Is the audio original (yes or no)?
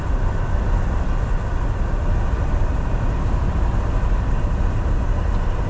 yes